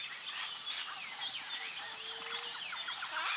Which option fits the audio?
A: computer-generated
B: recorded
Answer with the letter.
B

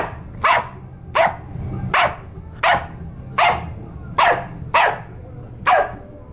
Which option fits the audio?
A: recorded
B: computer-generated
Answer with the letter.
A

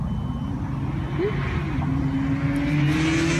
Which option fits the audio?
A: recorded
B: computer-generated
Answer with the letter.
A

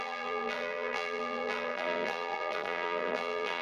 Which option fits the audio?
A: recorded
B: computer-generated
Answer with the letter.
B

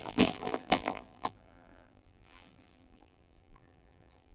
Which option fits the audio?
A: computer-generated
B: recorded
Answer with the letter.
A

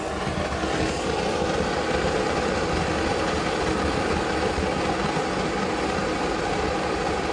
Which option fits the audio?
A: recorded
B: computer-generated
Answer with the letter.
A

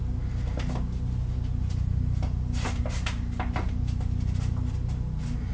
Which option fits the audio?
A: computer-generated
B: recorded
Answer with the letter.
B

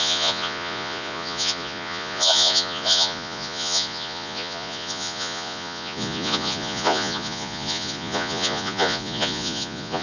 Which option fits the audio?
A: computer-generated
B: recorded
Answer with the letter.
A